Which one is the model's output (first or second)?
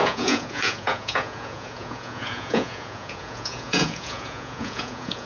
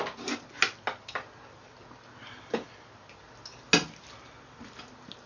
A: first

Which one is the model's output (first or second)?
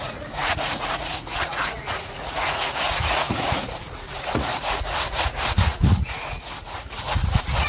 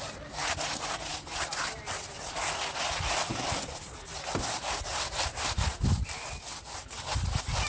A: first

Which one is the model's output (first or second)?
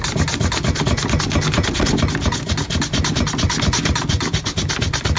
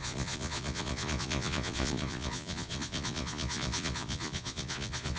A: second